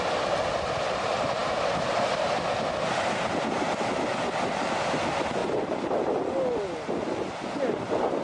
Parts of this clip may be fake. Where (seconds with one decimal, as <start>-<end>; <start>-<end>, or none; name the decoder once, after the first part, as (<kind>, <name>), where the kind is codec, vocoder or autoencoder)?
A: none